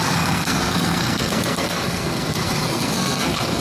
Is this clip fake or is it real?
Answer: fake